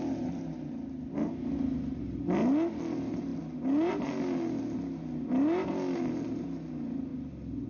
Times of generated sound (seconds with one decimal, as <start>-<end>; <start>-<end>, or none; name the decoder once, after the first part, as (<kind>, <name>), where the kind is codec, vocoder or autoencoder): none